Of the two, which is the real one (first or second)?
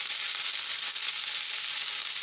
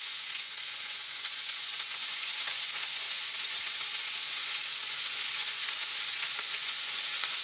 first